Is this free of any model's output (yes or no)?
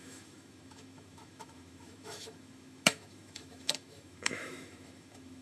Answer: no